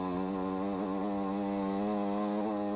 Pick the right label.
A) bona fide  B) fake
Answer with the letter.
A